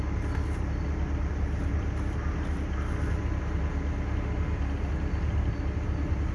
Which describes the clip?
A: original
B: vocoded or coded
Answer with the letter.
A